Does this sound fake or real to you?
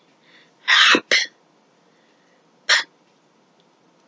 real